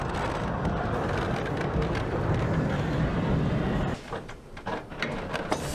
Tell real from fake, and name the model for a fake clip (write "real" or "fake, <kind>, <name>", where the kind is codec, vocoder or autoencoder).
real